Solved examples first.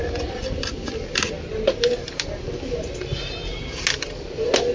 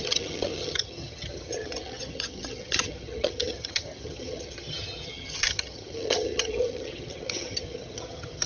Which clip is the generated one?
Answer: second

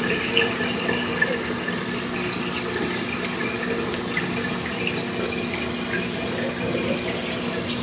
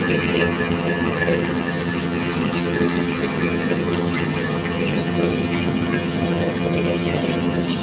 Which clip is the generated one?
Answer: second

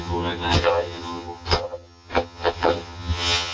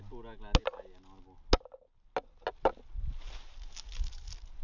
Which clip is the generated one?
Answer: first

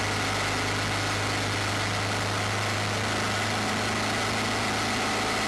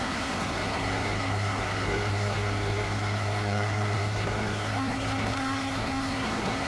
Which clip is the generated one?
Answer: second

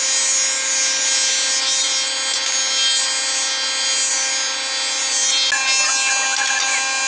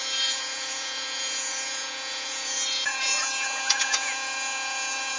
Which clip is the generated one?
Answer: second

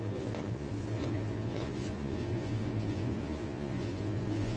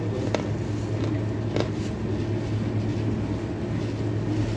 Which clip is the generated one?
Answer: first